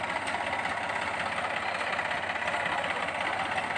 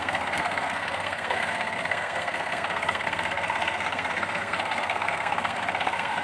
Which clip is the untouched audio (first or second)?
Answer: first